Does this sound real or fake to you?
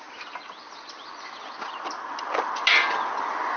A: real